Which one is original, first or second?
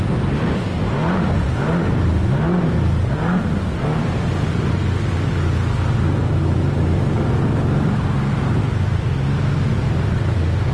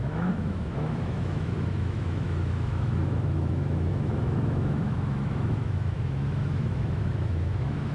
first